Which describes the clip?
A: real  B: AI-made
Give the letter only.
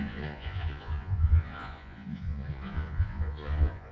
B